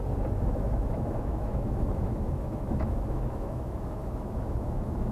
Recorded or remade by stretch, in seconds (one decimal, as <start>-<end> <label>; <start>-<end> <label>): 0.0-0.5 recorded; 0.5-5.1 remade